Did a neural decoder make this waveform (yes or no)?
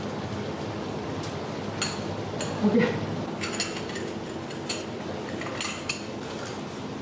no